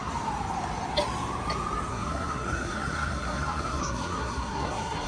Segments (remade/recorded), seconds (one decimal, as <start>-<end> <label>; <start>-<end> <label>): 0.0-1.9 recorded; 1.9-5.1 remade